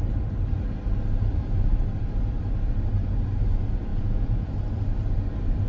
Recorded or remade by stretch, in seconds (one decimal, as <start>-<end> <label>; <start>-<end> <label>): 0.0-3.9 recorded; 3.9-4.5 remade; 4.5-5.7 recorded